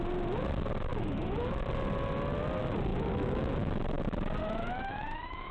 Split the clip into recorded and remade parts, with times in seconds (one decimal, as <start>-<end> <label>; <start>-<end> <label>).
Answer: 0.0-0.9 recorded; 0.9-1.6 remade; 1.6-2.9 recorded; 2.9-4.0 remade; 4.0-4.4 recorded; 4.4-5.5 remade